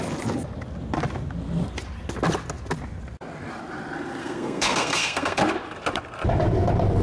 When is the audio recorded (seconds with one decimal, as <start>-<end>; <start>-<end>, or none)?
0.0-4.2; 5.4-7.0